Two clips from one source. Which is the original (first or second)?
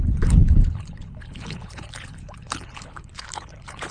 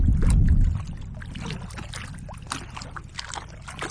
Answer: second